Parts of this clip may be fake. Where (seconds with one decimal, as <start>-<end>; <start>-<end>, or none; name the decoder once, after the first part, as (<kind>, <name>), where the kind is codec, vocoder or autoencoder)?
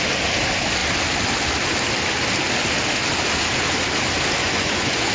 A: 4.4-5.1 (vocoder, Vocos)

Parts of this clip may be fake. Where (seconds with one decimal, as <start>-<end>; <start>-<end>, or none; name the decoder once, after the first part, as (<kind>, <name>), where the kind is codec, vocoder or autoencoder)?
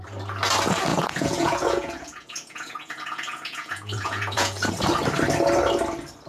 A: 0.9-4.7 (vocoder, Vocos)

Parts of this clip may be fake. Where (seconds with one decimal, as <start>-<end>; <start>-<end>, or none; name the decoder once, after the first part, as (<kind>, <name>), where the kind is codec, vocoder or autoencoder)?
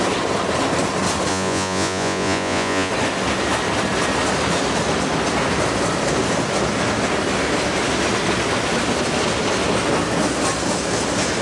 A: 1.3-2.9 (vocoder, Vocos)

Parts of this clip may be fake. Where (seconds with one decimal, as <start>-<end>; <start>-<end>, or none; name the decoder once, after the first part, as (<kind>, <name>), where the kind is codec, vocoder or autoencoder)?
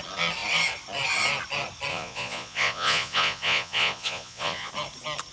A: 1.9-4.7 (vocoder, Vocos)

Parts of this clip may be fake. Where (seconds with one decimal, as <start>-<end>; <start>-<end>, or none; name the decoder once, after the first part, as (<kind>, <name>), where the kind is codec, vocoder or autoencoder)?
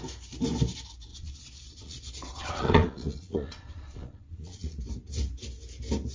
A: 1.1-4.8 (vocoder, Vocos)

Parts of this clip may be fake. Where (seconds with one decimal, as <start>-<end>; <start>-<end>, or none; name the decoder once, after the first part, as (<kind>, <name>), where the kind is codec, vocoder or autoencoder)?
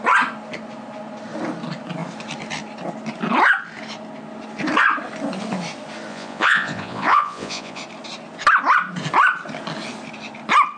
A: 6.1-7.8 (vocoder, Vocos)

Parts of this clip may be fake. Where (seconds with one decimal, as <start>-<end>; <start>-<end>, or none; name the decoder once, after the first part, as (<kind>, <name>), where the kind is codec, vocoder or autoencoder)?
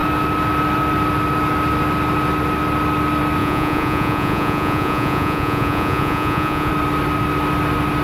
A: 3.4-6.7 (vocoder, Vocos)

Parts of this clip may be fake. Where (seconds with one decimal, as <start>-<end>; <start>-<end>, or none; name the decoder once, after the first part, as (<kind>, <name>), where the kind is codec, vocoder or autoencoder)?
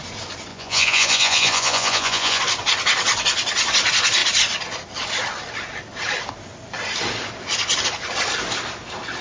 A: 0.5-2.4 (vocoder, Vocos)